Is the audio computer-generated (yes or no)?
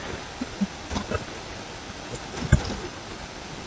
no